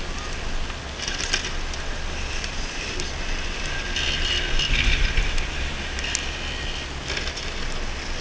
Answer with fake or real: real